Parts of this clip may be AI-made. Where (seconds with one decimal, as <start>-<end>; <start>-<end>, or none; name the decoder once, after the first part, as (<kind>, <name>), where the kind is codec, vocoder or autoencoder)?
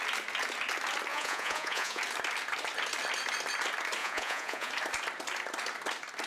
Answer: 1.1-2.0 (vocoder, Vocos); 4.0-4.7